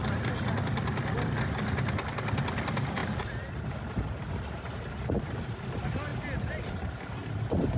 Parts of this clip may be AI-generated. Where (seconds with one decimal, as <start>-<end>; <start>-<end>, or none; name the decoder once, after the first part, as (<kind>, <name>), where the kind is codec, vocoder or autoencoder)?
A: none